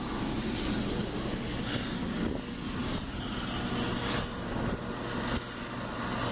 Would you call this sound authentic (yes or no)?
yes